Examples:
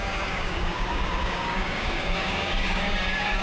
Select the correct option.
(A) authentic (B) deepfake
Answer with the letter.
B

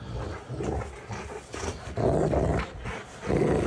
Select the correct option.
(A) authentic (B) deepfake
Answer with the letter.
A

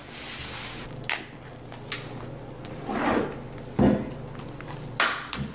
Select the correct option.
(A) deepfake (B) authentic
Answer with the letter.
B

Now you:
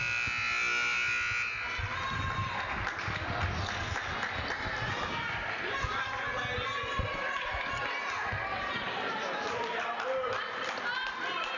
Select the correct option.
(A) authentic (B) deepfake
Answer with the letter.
A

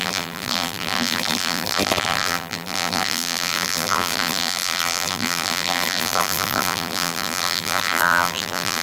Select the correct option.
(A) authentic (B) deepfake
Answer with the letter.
B